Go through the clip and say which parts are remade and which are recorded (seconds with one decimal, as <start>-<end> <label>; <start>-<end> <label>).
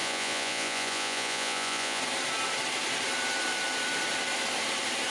0.0-2.0 remade; 2.0-5.1 recorded